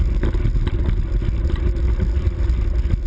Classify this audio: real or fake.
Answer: real